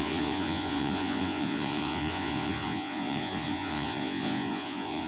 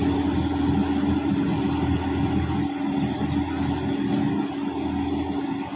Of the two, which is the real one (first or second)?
second